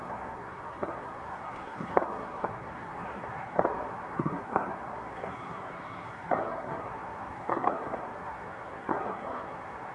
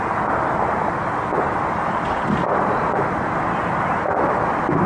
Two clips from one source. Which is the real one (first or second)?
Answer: second